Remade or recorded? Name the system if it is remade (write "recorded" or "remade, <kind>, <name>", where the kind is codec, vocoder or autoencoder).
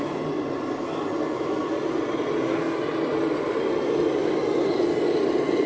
recorded